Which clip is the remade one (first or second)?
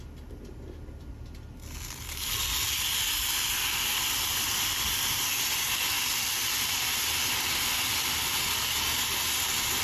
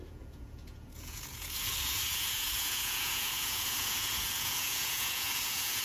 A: second